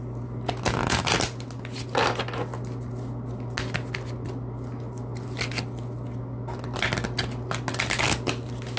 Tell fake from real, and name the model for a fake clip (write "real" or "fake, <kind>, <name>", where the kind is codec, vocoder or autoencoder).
real